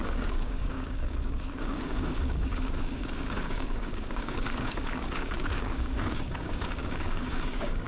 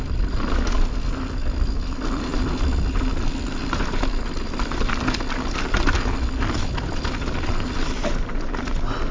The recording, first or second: second